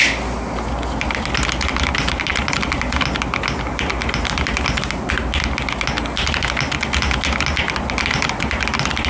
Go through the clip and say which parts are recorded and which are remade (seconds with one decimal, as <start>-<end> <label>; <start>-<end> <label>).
0.0-9.1 recorded